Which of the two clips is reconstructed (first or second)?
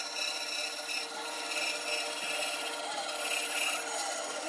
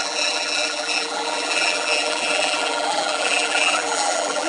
second